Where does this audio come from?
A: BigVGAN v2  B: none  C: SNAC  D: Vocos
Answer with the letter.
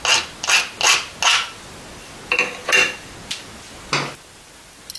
B